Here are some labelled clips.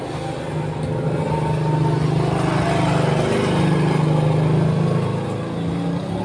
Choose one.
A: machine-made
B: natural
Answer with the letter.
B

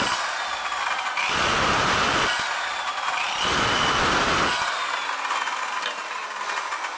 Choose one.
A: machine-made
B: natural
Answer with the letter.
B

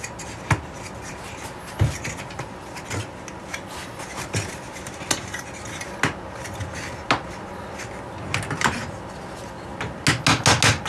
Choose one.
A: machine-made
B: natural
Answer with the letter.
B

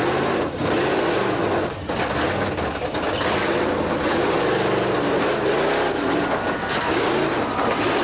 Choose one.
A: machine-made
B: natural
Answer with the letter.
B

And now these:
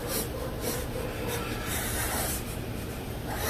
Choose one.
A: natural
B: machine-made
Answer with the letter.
B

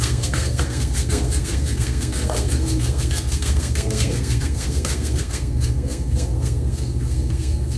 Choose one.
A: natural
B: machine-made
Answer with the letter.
B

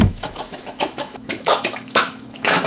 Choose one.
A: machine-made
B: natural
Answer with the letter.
A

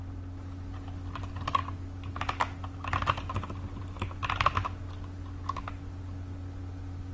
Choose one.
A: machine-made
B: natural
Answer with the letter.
B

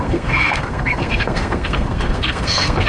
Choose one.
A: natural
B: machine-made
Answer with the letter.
B